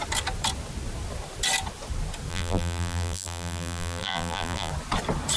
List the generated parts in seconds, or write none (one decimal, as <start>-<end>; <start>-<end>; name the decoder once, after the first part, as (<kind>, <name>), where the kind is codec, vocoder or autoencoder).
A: 2.3-4.7 (vocoder, BigVGAN v2)